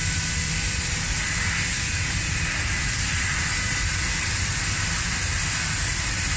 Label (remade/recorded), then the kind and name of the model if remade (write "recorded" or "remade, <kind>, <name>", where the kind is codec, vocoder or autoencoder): remade, vocoder, BigVGAN v2